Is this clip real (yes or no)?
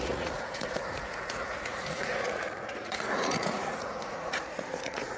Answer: no